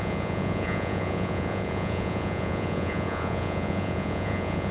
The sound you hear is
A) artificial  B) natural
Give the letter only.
A